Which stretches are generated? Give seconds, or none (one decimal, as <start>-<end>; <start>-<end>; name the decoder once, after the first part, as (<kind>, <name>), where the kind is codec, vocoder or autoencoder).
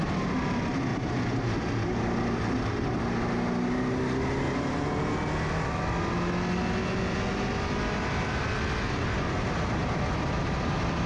none